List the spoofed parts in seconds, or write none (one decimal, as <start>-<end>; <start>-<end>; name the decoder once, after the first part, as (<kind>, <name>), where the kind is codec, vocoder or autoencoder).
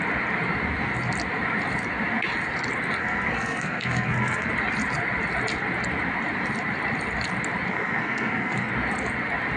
3.0-4.5 (codec, SNAC); 7.7-8.7